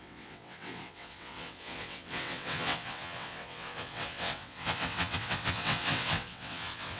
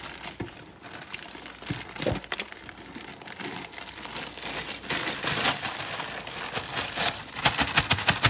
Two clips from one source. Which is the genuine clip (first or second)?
second